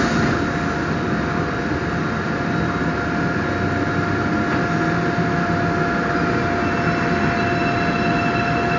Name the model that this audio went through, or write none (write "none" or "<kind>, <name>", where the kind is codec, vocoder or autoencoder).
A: none